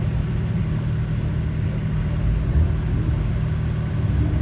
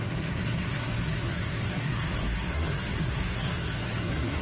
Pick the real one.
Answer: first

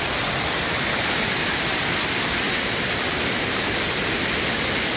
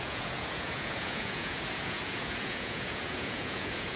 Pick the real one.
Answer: first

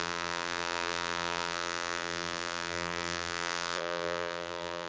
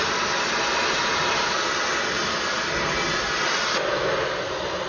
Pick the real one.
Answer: second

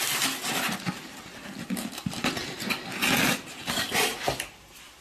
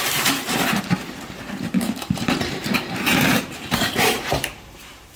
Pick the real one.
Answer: first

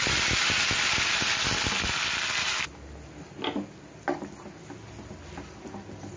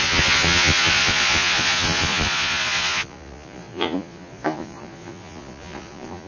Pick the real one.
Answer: first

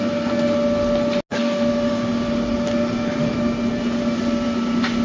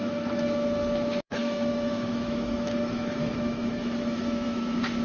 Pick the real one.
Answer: first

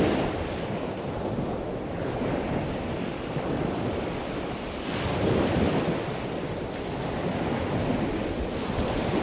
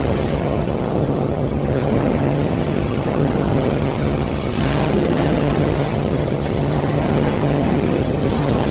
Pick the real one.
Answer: first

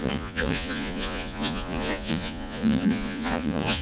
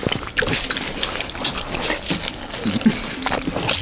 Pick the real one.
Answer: second